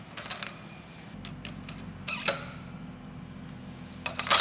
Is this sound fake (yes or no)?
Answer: no